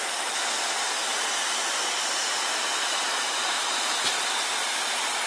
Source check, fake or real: real